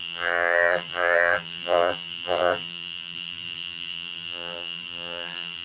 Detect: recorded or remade remade